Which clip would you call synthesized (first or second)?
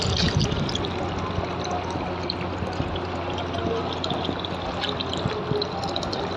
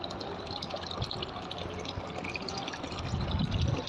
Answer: second